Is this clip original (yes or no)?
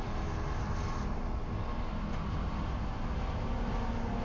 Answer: yes